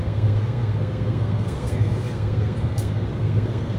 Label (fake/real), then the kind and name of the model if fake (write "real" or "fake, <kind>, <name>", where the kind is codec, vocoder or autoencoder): fake, codec, SNAC